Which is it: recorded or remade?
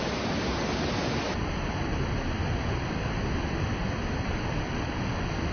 recorded